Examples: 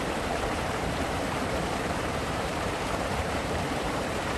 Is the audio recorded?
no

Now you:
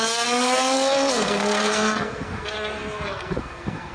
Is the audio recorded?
no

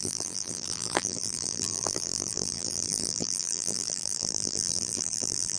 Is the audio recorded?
no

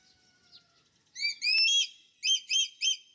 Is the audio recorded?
yes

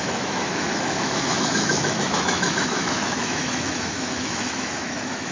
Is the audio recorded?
no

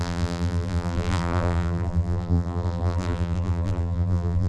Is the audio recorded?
no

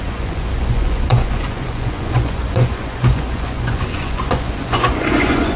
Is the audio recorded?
no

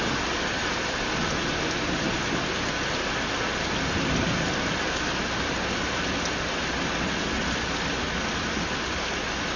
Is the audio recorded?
yes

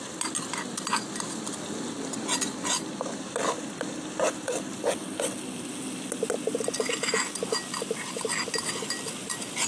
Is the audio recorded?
yes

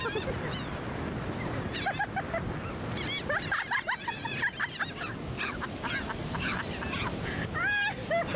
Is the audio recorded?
yes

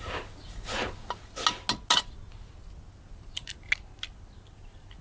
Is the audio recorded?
yes